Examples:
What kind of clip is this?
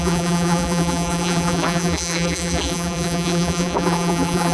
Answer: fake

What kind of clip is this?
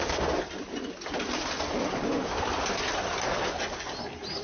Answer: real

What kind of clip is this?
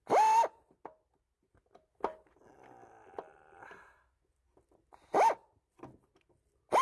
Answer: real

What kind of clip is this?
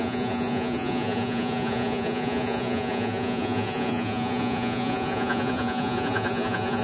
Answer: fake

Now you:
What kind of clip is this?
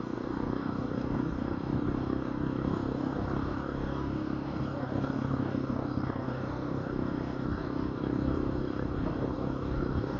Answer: fake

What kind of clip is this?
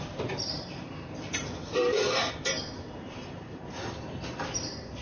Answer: fake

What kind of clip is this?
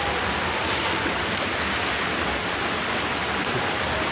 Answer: real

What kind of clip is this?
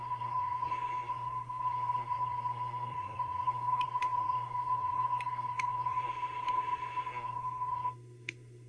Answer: fake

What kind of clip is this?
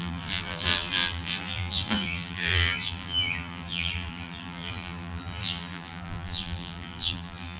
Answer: fake